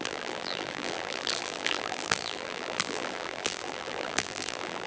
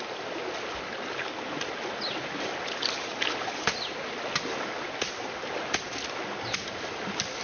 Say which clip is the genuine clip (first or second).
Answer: second